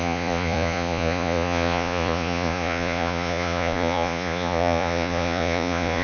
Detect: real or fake fake